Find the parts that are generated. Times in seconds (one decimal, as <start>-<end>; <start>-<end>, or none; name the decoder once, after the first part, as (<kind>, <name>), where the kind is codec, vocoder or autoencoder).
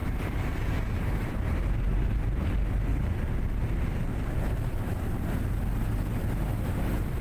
0.0-2.5 (vocoder, BigVGAN v2); 2.9-5.0